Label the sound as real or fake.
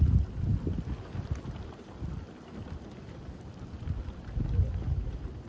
real